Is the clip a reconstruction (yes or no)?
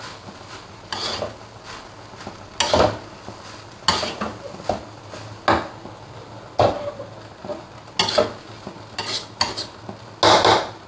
no